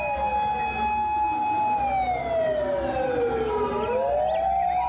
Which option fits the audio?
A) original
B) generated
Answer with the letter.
A